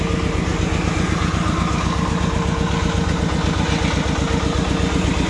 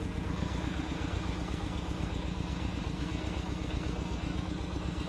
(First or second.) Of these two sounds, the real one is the first